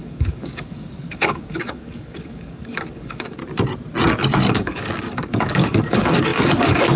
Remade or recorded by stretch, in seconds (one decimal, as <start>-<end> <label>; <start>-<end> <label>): 0.0-3.4 remade; 3.4-4.5 recorded; 4.5-7.0 remade